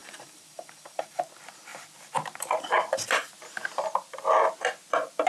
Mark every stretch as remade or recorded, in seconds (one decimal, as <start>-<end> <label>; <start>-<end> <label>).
0.0-1.2 remade; 1.2-5.3 recorded